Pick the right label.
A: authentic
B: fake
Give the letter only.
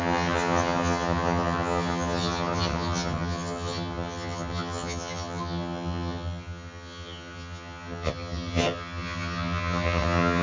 B